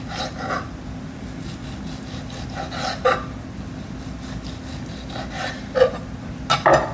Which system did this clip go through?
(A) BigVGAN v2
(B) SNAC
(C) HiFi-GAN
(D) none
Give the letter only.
D